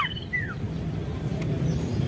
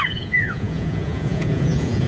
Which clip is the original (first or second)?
first